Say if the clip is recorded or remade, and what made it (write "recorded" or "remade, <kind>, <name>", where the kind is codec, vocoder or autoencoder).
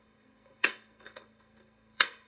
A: remade, codec, SNAC